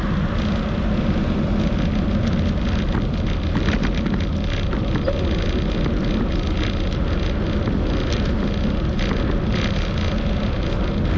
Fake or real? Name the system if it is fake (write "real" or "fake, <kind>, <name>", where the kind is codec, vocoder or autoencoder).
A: real